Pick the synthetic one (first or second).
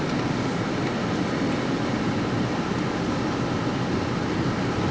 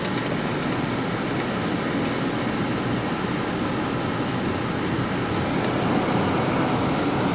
first